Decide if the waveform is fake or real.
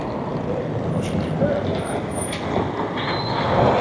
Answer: real